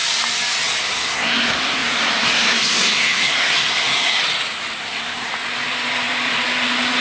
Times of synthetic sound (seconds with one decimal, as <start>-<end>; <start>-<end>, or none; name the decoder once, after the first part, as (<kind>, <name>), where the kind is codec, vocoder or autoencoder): 0.8-4.2 (codec, SNAC); 4.8-5.3